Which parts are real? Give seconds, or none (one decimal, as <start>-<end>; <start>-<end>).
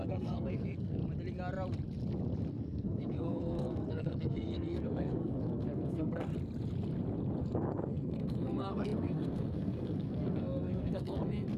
1.0-2.5; 6.3-7.4